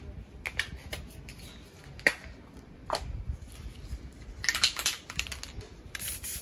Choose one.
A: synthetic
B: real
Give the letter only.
B